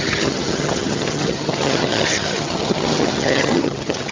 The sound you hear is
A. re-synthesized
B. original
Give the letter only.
A